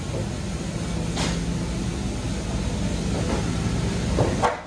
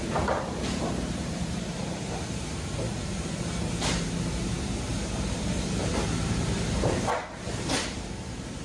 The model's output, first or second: second